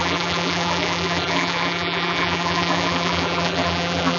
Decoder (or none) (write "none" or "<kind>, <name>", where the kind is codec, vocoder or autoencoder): vocoder, BigVGAN v2